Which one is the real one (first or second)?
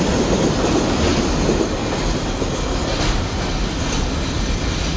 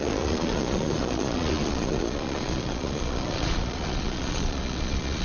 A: first